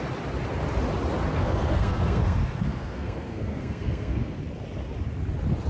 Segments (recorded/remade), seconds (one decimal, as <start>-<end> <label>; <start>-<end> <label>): 0.0-1.3 recorded; 1.3-4.4 remade; 4.4-5.7 recorded